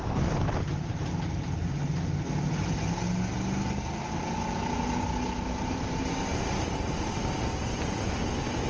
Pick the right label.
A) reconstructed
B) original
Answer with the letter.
B